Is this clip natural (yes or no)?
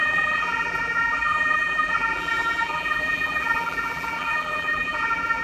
no